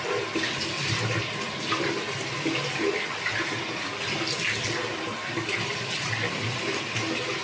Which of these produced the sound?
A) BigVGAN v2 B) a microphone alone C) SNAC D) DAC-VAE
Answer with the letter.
B